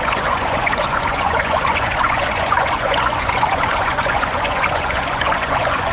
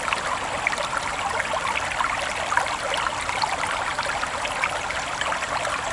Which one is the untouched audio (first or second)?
second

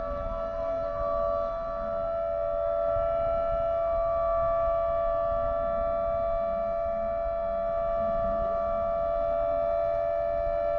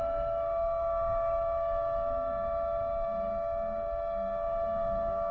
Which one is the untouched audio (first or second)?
first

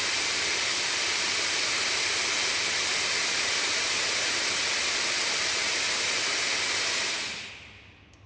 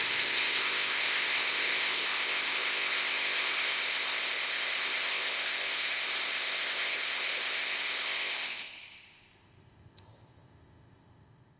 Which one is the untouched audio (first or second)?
first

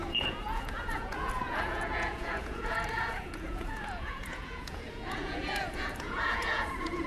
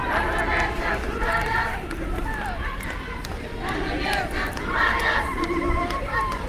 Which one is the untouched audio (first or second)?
second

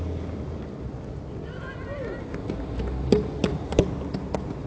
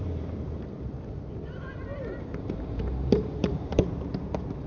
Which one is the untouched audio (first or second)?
first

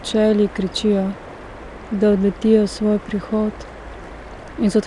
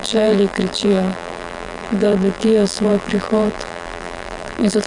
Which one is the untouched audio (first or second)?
first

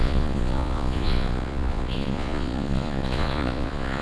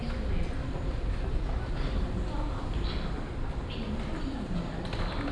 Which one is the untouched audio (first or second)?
second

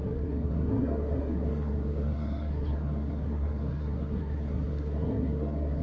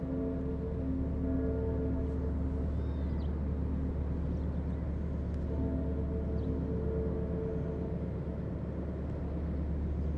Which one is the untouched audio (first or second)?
second